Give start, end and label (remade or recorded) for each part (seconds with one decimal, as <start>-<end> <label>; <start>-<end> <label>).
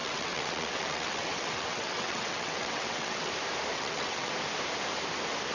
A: 0.0-3.3 remade; 3.3-3.7 recorded; 3.7-4.3 remade; 4.3-5.5 recorded